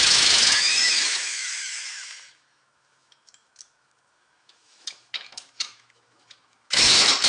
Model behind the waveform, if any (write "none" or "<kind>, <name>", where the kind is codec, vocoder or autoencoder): autoencoder, DAC-VAE